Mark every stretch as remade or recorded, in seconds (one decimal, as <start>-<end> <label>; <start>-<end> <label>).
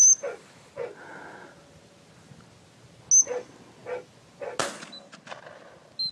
0.0-6.1 recorded